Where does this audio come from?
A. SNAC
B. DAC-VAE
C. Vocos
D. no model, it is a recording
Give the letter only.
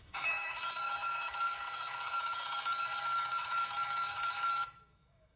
B